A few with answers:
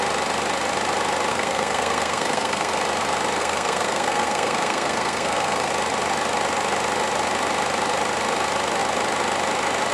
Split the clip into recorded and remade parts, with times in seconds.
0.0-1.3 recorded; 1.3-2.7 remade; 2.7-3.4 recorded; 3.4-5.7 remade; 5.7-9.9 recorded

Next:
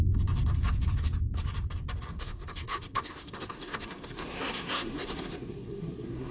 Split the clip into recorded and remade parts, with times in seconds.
0.0-2.1 recorded; 2.1-6.3 remade

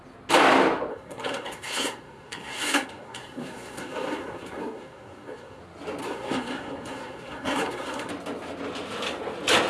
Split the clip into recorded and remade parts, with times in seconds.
0.0-0.9 recorded; 0.9-5.6 remade; 5.6-6.0 recorded; 6.0-8.1 remade; 8.1-9.7 recorded

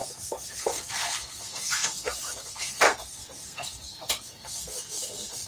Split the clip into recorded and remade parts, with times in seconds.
0.0-5.5 remade

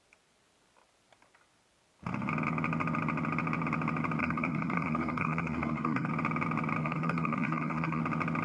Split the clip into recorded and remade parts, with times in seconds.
0.0-4.2 recorded; 4.2-6.1 remade; 6.1-6.8 recorded; 6.8-8.0 remade; 8.0-8.4 recorded

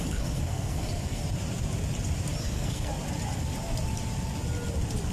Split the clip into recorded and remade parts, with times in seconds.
0.0-1.2 remade; 1.2-2.4 recorded; 2.4-2.9 remade; 2.9-5.1 recorded

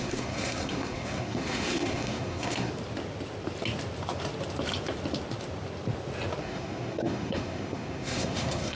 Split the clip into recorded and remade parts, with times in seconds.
0.0-2.7 remade; 2.7-6.4 recorded; 6.4-8.7 remade

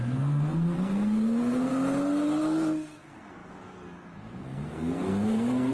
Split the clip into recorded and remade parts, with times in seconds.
0.0-1.7 remade; 1.7-2.4 recorded; 2.4-5.7 remade